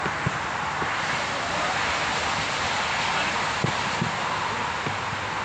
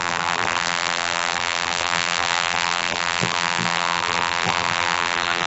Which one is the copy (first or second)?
second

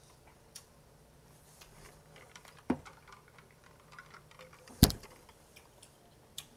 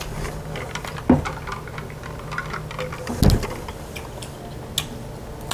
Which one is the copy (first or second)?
first